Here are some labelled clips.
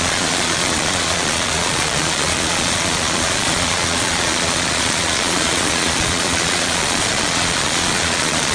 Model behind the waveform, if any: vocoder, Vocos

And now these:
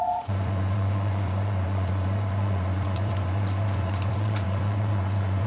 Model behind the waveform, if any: vocoder, Vocos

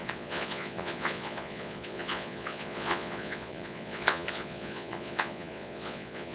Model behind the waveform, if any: vocoder, Vocos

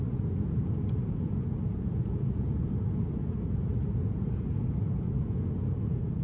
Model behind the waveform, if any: vocoder, Vocos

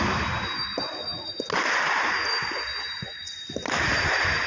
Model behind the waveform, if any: none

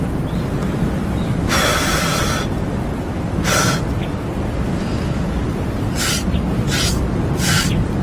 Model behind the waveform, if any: none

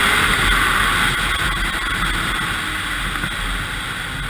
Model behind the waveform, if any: none